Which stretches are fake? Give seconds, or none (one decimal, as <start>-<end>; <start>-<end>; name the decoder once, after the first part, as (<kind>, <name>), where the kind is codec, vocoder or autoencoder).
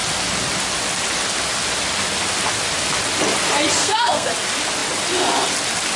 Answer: 3.8-4.3 (codec, SNAC)